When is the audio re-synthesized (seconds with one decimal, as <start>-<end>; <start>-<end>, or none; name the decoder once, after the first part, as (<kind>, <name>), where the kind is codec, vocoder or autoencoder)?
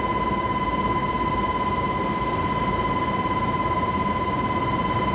none